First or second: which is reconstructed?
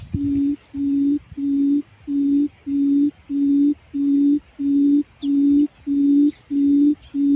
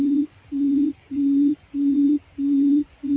second